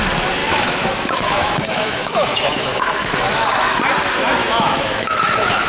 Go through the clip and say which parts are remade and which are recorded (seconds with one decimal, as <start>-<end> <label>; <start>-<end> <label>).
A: 0.0-0.4 recorded; 0.4-3.8 remade; 3.8-4.4 recorded; 4.4-5.7 remade